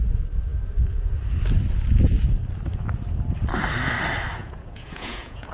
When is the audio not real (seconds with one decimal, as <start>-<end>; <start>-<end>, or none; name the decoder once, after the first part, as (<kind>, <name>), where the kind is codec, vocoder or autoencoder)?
4.4-5.5 (vocoder, Vocos)